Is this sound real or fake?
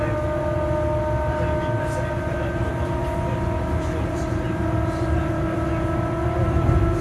real